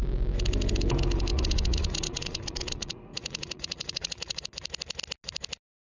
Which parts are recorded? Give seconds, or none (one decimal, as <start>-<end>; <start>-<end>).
0.0-1.3; 4.4-5.9